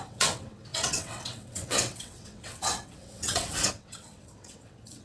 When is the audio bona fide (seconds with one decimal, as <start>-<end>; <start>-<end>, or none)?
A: none